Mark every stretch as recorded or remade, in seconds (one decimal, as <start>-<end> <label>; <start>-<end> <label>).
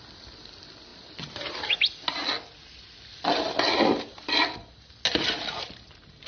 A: 0.0-6.3 recorded